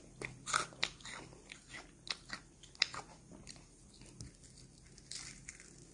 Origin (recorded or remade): recorded